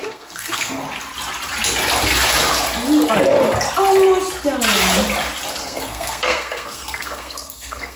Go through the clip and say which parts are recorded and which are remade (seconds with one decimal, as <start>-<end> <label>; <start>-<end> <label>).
0.0-0.8 remade; 0.8-5.6 recorded; 5.6-8.0 remade